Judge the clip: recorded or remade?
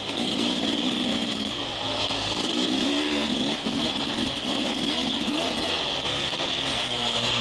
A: remade